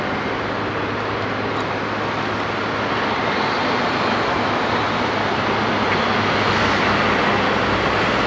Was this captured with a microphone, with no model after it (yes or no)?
yes